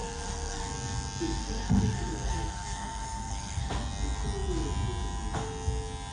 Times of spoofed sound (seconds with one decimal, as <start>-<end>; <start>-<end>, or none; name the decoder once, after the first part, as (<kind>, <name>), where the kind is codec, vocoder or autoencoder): 0.0-0.6 (codec, SNAC); 1.4-3.7